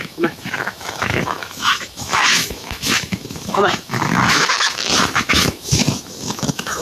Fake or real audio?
fake